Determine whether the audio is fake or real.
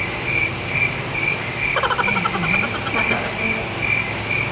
real